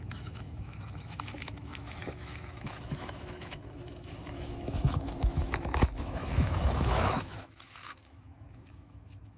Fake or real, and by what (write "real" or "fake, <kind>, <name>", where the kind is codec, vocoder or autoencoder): fake, autoencoder, DAC-VAE